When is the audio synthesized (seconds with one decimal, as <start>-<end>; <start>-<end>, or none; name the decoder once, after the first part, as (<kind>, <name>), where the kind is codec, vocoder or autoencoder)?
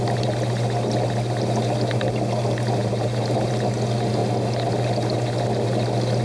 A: 2.8-3.5 (vocoder, BigVGAN v2)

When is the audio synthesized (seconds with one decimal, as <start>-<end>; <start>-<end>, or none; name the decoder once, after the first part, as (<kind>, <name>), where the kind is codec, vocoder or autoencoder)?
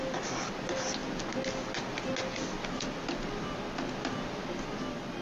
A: none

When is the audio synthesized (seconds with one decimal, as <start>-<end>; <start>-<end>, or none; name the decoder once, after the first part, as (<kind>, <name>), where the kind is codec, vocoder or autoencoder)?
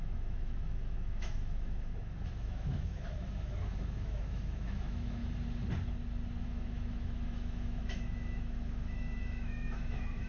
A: 0.0-5.2 (autoencoder, DAC-VAE); 6.4-10.3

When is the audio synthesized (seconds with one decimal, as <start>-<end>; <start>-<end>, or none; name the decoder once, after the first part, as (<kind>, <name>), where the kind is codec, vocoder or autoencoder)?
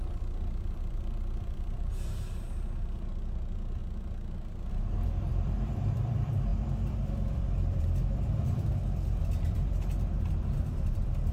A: 0.0-1.9 (vocoder, BigVGAN v2); 2.6-3.8; 4.7-11.3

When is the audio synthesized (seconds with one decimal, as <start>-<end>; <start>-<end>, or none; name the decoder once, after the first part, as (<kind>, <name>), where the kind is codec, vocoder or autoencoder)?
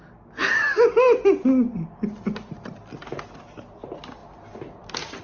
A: none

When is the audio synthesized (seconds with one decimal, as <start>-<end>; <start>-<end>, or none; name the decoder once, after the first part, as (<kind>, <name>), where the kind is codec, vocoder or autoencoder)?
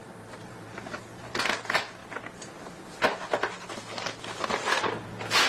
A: 0.0-1.4 (vocoder, BigVGAN v2)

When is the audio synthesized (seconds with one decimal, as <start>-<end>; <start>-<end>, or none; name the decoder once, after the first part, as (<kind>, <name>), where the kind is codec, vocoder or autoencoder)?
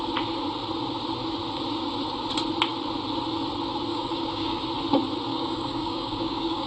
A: 3.9-4.6 (codec, DAC); 5.3-6.7